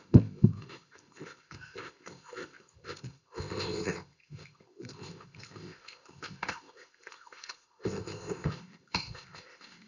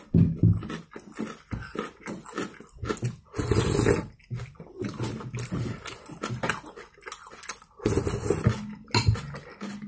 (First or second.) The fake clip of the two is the first